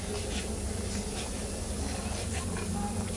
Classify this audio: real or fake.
real